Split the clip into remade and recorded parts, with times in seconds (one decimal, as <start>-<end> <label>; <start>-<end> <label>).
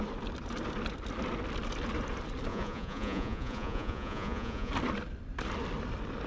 0.0-2.5 recorded; 2.5-4.7 remade; 4.7-6.3 recorded